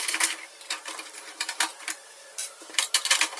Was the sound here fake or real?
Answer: fake